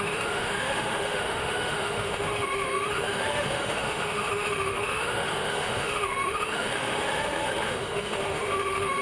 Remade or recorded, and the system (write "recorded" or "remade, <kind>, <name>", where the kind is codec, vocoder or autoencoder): remade, autoencoder, DAC-VAE